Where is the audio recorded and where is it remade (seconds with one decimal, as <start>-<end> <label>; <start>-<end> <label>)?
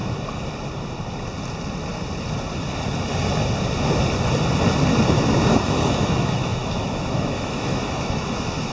0.0-5.1 recorded; 5.1-8.7 remade